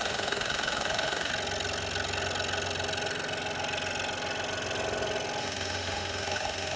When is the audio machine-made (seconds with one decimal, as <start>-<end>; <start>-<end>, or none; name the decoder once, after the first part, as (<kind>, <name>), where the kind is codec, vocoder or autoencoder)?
0.0-1.3 (autoencoder, DAC-VAE); 5.4-6.8